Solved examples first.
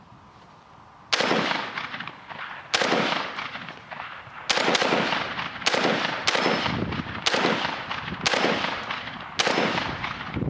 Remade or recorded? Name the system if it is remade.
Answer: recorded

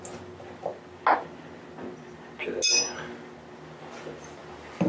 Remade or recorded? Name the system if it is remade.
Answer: recorded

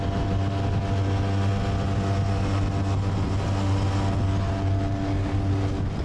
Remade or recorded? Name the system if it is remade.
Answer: recorded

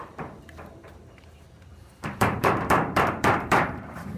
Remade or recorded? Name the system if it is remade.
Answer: remade, vocoder, BigVGAN v2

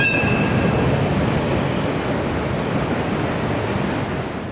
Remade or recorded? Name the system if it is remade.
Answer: recorded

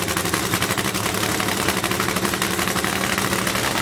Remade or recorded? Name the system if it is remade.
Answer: remade, vocoder, BigVGAN v2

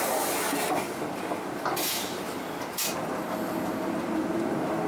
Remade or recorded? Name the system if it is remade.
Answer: recorded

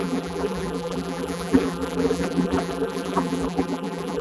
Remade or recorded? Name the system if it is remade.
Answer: remade, vocoder, BigVGAN v2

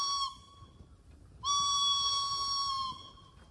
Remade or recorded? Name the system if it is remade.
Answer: recorded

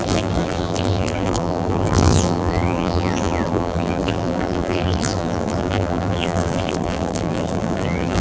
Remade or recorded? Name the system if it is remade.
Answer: remade, vocoder, BigVGAN v2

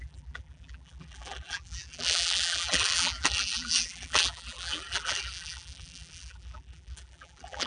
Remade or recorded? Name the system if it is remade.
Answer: remade, vocoder, BigVGAN v2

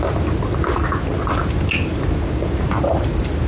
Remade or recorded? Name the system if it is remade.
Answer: recorded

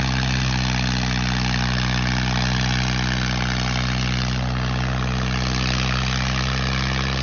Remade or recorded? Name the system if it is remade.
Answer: recorded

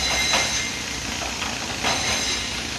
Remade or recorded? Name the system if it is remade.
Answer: recorded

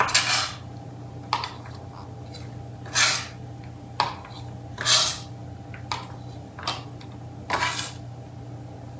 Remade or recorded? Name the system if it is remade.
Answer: recorded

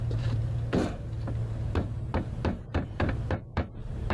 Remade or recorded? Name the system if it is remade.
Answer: remade, vocoder, BigVGAN v2